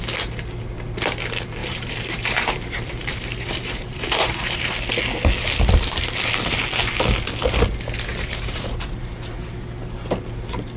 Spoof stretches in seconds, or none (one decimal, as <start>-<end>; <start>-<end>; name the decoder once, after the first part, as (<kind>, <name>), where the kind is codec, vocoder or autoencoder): 1.6-4.7 (vocoder, BigVGAN v2); 8.1-9.3